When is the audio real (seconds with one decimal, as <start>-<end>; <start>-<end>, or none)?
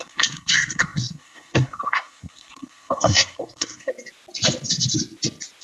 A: 3.9-5.6